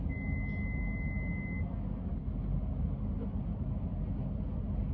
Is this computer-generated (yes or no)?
no